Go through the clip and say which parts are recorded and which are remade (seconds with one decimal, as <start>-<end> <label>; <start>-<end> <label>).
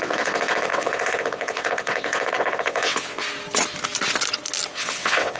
0.0-3.2 remade; 3.2-4.7 recorded; 4.7-5.4 remade